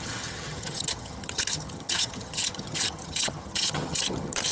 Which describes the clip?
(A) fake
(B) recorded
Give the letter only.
A